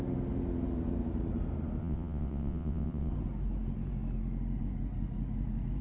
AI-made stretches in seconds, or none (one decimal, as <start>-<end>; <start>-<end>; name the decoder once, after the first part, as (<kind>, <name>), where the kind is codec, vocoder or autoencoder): 1.8-3.1 (vocoder, WaveNeXt)